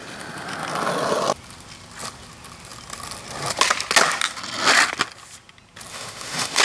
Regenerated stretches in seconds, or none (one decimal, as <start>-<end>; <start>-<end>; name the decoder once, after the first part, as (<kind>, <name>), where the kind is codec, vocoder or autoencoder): 5.9-6.6 (autoencoder, DAC-VAE)